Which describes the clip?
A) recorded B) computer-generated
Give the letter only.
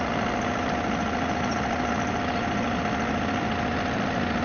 A